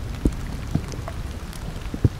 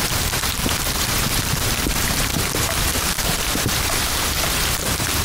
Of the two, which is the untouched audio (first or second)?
first